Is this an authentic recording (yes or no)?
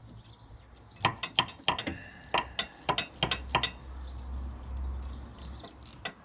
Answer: yes